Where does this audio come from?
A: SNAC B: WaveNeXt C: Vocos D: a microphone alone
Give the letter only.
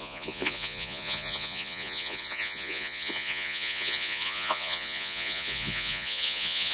C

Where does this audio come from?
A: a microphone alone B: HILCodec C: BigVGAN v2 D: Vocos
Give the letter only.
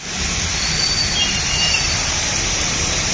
A